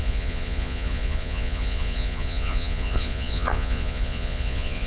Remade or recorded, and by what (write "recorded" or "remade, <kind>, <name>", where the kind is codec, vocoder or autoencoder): remade, vocoder, Vocos